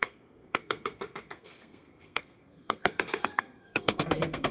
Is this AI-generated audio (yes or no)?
yes